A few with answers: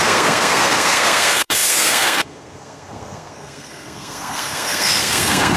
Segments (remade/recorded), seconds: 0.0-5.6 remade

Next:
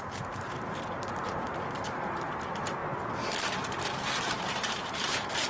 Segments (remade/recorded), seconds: 0.0-2.8 remade; 2.8-4.2 recorded; 4.2-5.5 remade

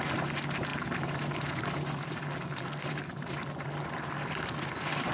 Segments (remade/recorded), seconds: 0.0-5.1 recorded